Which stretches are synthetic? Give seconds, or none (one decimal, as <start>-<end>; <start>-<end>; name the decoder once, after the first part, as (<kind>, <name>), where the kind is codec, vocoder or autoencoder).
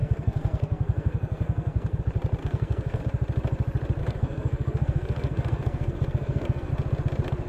0.0-2.0 (codec, SNAC); 2.4-3.0; 4.0-6.7